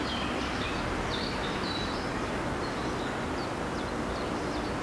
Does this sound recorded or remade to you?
recorded